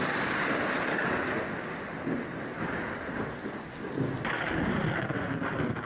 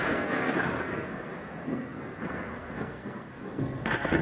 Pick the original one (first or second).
first